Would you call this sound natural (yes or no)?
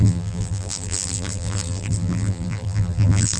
no